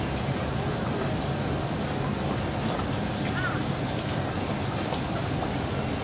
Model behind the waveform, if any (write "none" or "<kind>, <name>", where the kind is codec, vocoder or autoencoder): none